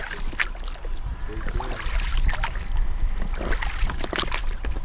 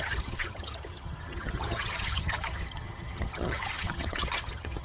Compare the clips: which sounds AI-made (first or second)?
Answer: second